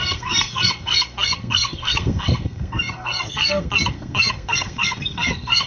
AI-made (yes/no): yes